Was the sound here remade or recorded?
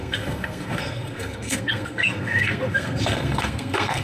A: remade